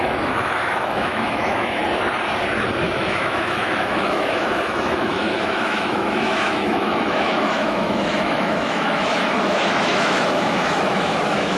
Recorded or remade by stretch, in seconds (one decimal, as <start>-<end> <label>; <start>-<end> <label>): 0.0-1.8 remade; 1.8-2.8 recorded; 2.8-11.6 remade